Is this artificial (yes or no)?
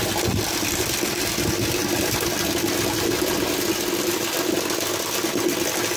no